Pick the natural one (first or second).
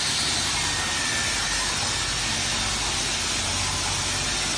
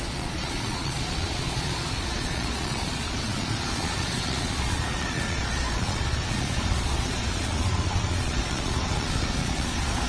first